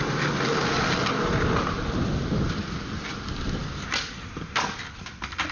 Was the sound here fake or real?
real